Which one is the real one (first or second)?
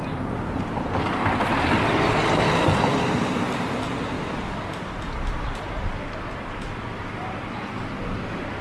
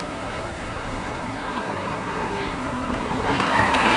first